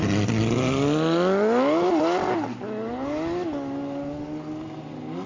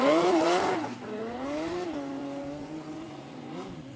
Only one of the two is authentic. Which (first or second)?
first